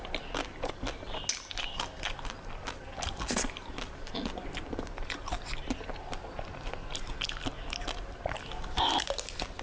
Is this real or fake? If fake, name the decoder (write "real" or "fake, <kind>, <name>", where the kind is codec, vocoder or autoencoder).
real